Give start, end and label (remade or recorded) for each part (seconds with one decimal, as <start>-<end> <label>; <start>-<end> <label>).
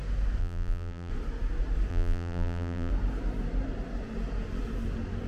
0.0-0.4 recorded; 0.4-1.1 remade; 1.1-1.9 recorded; 1.9-2.9 remade; 2.9-5.3 recorded